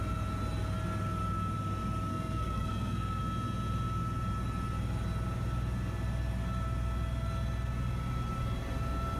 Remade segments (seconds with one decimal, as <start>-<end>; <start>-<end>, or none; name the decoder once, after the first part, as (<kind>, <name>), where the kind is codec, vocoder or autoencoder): 2.1-3.2 (codec, SNAC)